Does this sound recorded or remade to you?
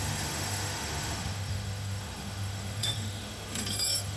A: remade